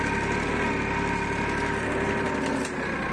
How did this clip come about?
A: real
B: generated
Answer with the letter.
A